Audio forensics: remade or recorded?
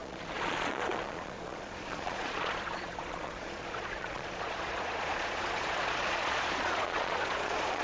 remade